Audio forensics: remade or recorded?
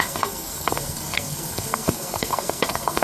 remade